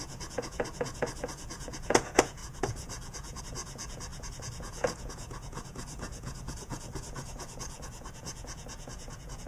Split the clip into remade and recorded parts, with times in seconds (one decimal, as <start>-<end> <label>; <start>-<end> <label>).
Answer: 0.0-9.5 remade